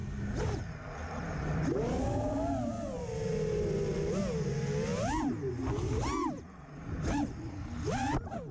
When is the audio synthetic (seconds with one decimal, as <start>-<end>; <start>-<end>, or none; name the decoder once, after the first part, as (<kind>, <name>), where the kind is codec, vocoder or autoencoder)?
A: 0.0-0.6 (vocoder, BigVGAN v2)